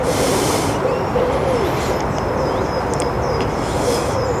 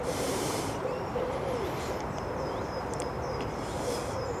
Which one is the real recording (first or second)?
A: first